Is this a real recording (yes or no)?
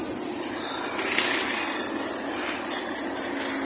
yes